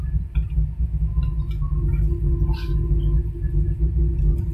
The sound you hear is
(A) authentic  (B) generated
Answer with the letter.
A